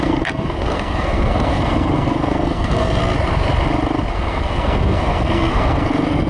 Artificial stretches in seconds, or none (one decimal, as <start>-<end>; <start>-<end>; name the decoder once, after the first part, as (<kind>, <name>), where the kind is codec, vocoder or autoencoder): 0.0-3.0 (codec, SNAC); 4.1-6.3

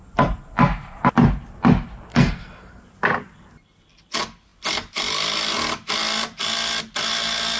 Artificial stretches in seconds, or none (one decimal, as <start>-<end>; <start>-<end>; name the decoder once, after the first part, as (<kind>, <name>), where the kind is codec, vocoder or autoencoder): 2.1-2.8 (codec, SNAC)